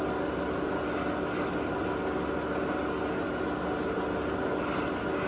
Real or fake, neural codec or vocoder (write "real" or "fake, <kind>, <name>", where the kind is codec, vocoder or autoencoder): real